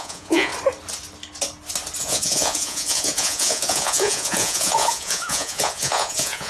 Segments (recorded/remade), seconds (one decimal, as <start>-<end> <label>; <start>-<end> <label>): 0.0-0.5 remade; 0.5-2.0 recorded; 2.0-6.5 remade